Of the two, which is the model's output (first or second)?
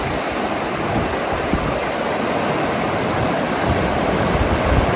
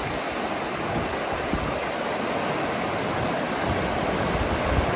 first